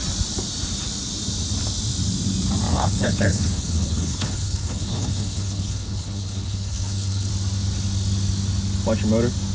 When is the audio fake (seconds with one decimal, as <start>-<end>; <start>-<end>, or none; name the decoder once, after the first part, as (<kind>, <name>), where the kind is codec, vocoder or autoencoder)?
2.7-7.3 (codec, HILCodec)